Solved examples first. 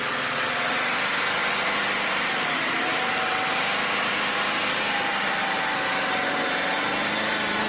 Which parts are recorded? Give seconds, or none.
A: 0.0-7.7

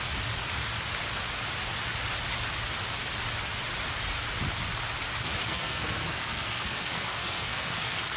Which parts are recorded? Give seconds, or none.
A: 0.0-5.4